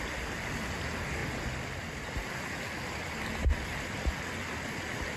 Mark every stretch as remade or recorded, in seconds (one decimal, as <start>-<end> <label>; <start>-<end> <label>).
0.0-5.2 recorded